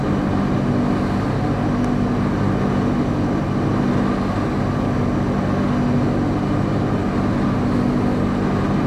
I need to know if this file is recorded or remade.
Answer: recorded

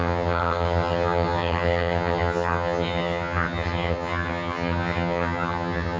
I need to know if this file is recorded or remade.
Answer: remade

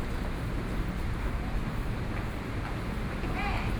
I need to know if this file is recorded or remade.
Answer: recorded